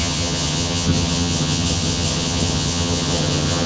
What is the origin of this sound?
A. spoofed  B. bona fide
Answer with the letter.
A